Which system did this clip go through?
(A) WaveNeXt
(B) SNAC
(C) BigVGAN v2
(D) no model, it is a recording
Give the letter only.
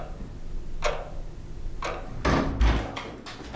D